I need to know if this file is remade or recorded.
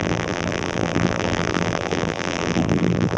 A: remade